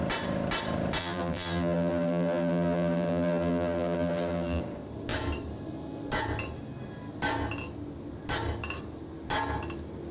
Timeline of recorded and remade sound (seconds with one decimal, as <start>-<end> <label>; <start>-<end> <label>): 0.0-1.0 recorded; 1.0-4.6 remade; 4.6-10.1 recorded